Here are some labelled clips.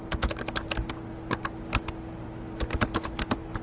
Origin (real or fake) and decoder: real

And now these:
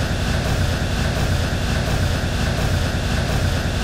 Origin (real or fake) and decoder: real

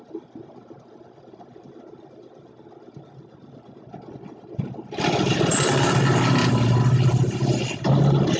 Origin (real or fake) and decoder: real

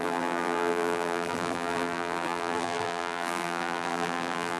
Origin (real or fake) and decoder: fake, vocoder, BigVGAN v2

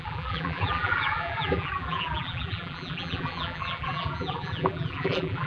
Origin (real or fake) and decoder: fake, vocoder, BigVGAN v2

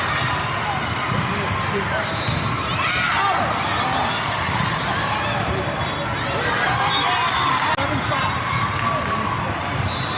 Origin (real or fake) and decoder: real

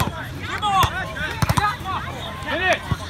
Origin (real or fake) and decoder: fake, vocoder, BigVGAN v2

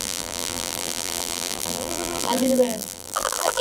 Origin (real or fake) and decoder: fake, vocoder, BigVGAN v2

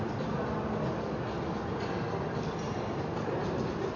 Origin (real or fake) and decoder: real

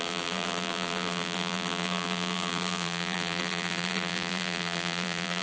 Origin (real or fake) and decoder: fake, vocoder, BigVGAN v2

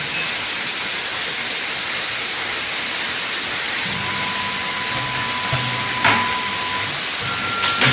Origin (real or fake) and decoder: real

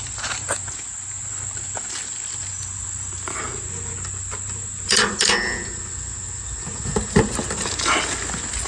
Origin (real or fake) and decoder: real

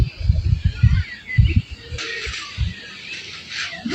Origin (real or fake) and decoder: fake, vocoder, BigVGAN v2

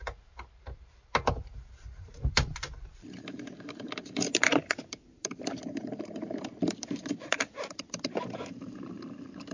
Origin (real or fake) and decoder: fake, vocoder, BigVGAN v2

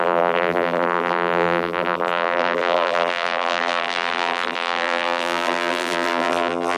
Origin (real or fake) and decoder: fake, vocoder, BigVGAN v2